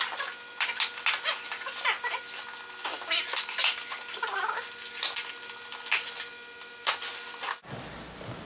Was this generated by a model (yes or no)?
no